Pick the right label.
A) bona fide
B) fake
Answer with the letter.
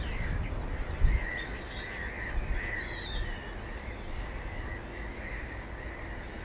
A